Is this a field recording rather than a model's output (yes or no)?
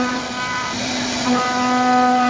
yes